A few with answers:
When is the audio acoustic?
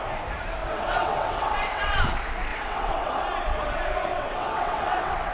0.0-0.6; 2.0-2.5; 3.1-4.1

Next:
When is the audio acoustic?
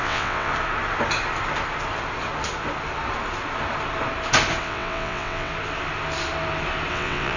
0.5-4.6; 5.5-6.9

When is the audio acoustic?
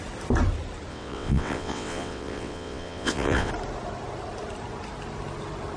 0.0-0.9; 3.5-5.8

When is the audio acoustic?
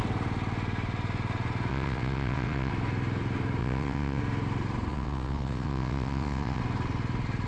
0.0-1.7; 2.7-3.6; 4.2-4.9; 6.6-7.5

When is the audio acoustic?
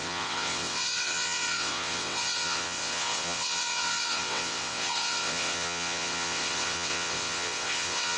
none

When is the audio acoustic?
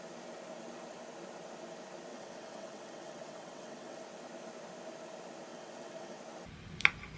0.0-2.1; 4.0-5.5; 6.2-7.2